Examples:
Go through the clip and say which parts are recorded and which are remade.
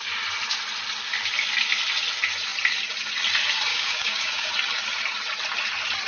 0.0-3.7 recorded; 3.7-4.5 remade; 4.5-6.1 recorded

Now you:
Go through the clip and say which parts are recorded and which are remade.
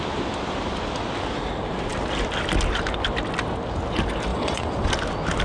0.0-4.3 recorded; 4.3-4.9 remade; 4.9-5.4 recorded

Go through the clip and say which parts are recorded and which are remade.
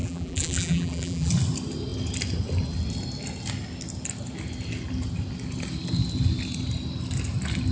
0.0-1.3 remade; 1.3-7.7 recorded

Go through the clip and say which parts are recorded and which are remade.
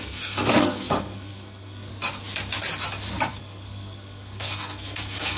0.0-1.9 remade; 1.9-3.3 recorded; 3.3-5.4 remade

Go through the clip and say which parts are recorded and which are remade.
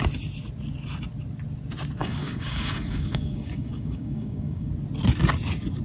0.0-2.0 recorded; 2.0-4.7 remade; 4.7-5.8 recorded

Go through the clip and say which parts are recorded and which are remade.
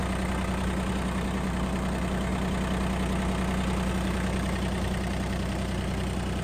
0.0-0.9 recorded; 0.9-2.3 remade; 2.3-3.9 recorded; 3.9-6.4 remade